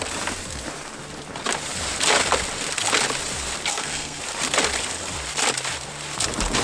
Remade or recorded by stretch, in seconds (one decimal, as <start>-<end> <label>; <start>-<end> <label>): 0.0-3.7 recorded; 3.7-4.2 remade; 4.2-6.6 recorded